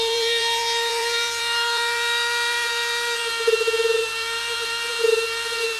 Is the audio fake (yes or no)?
yes